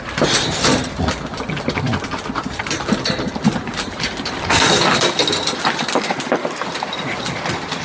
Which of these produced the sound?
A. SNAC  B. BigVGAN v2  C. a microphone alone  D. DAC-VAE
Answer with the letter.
C